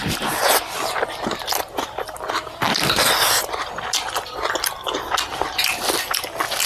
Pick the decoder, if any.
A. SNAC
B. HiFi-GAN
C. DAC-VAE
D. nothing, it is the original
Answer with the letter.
D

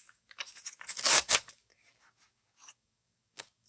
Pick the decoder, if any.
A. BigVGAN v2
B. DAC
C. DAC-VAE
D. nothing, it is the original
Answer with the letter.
B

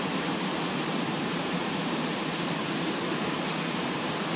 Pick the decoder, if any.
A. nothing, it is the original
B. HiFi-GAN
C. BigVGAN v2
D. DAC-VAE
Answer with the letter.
C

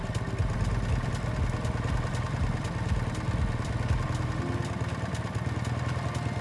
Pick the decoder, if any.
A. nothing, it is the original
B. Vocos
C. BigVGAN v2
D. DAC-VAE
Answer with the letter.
A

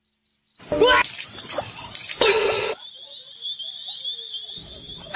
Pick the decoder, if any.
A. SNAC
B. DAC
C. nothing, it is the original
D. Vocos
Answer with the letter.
C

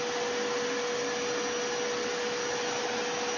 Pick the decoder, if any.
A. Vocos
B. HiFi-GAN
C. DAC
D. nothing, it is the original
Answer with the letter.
D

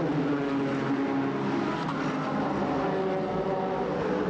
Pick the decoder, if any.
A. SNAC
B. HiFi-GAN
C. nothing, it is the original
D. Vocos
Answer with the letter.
C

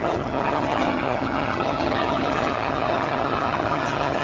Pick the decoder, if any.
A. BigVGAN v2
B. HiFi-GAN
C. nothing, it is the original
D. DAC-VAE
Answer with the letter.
B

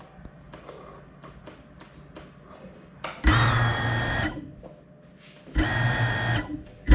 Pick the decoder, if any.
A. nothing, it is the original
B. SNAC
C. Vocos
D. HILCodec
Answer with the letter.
A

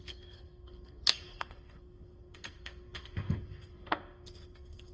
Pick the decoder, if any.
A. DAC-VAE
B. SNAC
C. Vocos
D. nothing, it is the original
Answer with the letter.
B